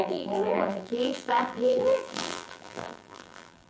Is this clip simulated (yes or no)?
yes